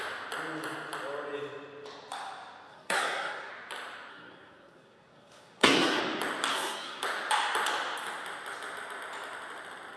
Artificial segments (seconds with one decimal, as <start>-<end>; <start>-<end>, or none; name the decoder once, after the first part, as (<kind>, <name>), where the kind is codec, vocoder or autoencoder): 2.7-3.5 (codec, SNAC); 4.1-6.0; 6.5-7.0